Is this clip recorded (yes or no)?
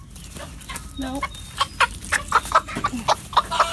yes